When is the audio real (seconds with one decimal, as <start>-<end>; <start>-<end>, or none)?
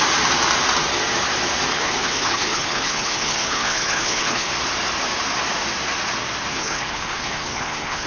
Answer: 0.0-1.7; 4.5-6.5